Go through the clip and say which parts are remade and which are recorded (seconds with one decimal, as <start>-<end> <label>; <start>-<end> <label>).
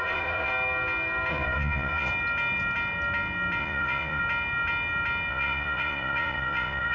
0.0-0.5 remade; 0.5-1.3 recorded; 1.3-2.1 remade; 2.1-3.6 recorded; 3.6-4.2 remade; 4.2-5.3 recorded; 5.3-6.9 remade